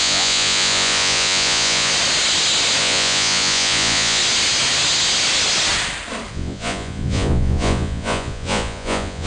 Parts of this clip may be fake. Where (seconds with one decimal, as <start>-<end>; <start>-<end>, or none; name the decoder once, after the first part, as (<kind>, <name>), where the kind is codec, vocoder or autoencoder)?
0.0-1.9 (vocoder, Vocos); 2.8-4.2; 6.3-9.3